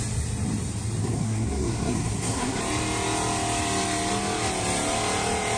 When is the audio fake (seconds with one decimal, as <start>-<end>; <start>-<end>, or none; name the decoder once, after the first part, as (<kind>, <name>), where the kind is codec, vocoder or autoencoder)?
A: 1.0-2.6 (codec, SNAC)